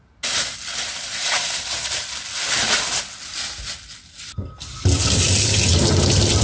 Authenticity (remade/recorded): recorded